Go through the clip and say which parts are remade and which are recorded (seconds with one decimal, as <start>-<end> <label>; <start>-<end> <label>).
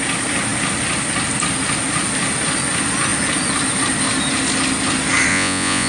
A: 0.0-5.3 recorded; 5.3-5.9 remade